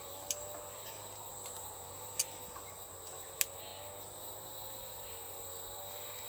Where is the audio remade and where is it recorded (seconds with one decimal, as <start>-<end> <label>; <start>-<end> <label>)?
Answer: 0.0-1.3 recorded; 1.3-2.2 remade; 2.2-6.3 recorded